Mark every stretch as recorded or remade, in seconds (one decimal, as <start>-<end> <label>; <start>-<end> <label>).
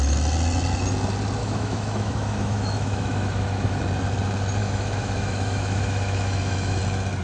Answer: 0.0-1.4 recorded; 1.4-3.8 remade; 3.8-4.6 recorded; 4.6-6.8 remade; 6.8-7.2 recorded